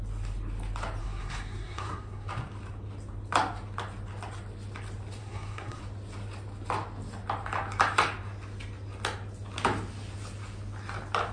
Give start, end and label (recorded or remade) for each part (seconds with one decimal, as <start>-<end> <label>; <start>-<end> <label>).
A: 0.0-1.0 recorded; 1.0-2.3 remade; 2.3-5.2 recorded; 5.2-5.8 remade; 5.8-11.3 recorded